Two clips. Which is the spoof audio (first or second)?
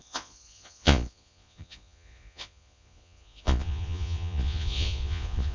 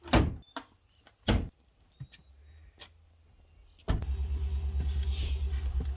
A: first